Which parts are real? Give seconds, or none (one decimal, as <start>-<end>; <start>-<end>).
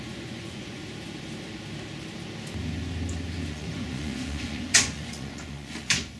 0.8-3.5